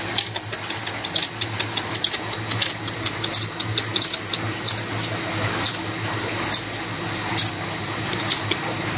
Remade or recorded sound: recorded